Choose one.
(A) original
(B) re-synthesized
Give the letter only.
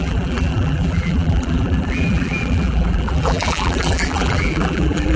B